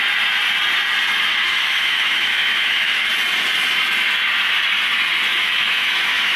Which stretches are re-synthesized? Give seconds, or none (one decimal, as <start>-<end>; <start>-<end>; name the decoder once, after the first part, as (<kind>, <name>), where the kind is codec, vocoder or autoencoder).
1.5-3.1 (autoencoder, DAC-VAE); 5.3-6.4